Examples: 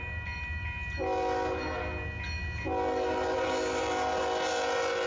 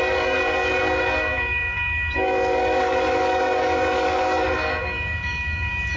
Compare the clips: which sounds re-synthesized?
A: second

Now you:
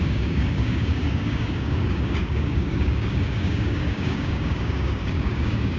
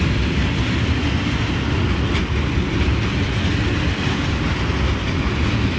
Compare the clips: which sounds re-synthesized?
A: first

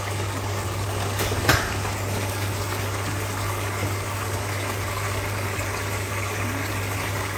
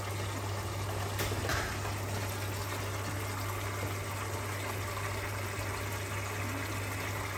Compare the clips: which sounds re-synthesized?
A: first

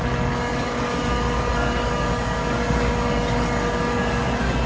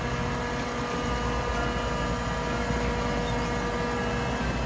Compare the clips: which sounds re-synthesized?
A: first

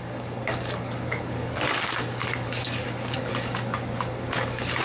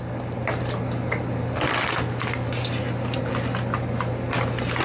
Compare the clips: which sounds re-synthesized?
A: first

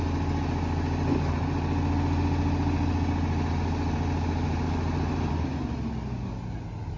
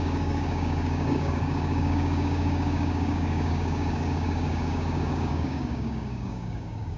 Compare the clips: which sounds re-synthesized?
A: second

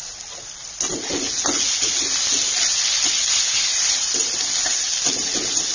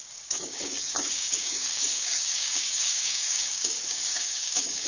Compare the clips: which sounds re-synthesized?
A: second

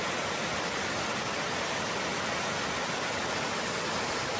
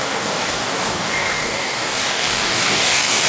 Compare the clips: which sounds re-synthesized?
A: second